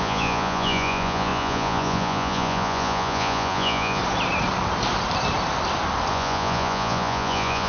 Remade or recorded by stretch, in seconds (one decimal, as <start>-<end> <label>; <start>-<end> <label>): 0.0-4.0 remade; 4.0-6.1 recorded; 6.1-7.7 remade